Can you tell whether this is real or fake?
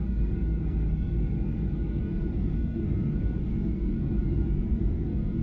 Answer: fake